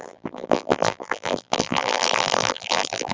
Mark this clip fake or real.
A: fake